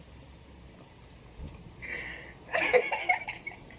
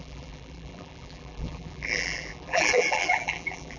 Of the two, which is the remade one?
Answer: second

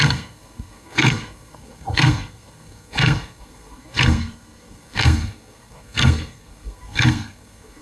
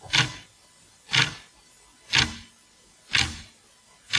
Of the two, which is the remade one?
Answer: first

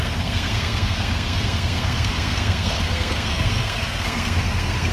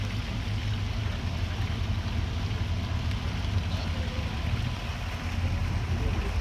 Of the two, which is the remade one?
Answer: first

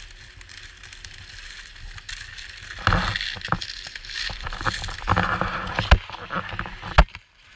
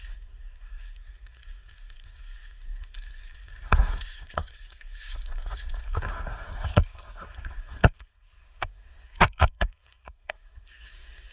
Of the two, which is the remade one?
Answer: second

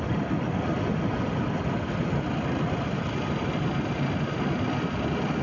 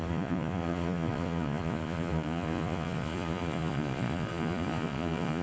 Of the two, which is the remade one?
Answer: second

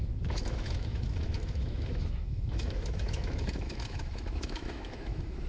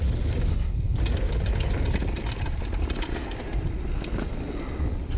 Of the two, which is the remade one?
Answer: first